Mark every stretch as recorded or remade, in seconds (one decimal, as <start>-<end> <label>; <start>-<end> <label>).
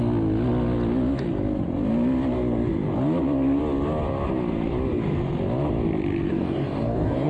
0.0-6.3 recorded; 6.3-7.3 remade